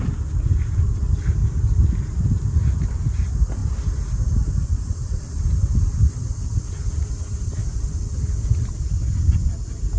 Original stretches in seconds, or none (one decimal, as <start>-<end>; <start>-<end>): 0.0-10.0